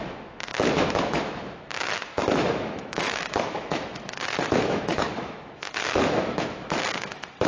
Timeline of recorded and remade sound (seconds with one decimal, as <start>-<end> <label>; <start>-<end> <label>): 0.0-7.5 remade